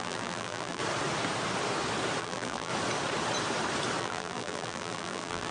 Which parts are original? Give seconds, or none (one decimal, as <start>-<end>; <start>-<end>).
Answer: 0.8-2.2; 2.7-4.0